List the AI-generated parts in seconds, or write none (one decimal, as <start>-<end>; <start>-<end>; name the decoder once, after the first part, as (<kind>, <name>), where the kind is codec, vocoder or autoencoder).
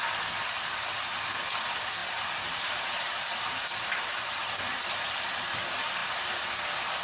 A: 2.0-5.4 (vocoder, BigVGAN v2)